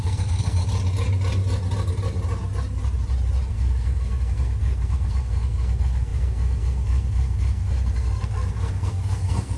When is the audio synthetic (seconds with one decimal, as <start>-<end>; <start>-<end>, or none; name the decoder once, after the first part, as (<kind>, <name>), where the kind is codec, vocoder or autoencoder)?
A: 0.0-0.6 (codec, SNAC); 3.5-9.6